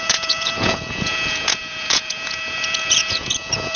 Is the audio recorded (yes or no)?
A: no